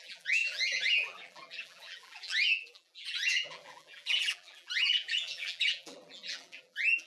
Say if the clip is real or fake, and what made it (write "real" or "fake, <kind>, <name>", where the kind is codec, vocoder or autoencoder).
fake, vocoder, BigVGAN v2